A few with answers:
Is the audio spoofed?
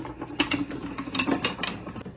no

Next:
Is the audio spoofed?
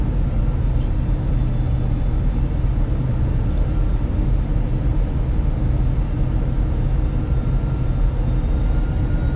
no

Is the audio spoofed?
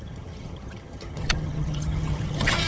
yes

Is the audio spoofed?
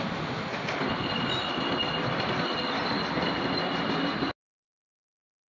no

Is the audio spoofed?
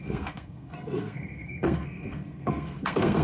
yes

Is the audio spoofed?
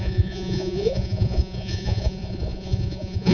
yes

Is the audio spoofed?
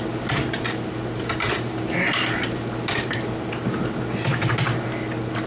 no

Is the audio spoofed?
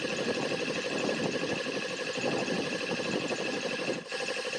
no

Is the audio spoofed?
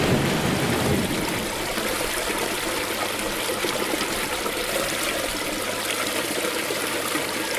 no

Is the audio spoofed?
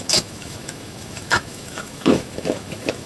yes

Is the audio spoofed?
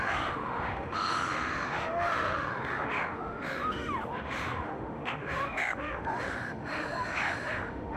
yes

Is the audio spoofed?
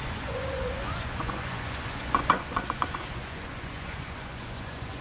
yes